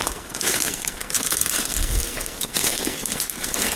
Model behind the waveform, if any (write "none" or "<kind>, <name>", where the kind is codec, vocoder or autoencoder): codec, SNAC